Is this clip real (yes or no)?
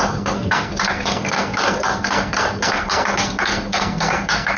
no